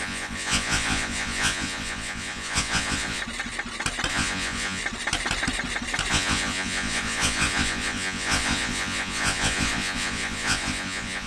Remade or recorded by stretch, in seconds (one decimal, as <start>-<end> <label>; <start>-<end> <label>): 0.0-3.2 remade; 3.2-4.1 recorded; 4.1-4.8 remade; 4.8-6.1 recorded; 6.1-11.3 remade